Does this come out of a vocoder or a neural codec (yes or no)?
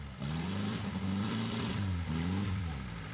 yes